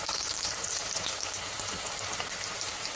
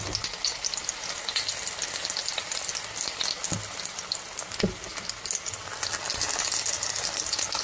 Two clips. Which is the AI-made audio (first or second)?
first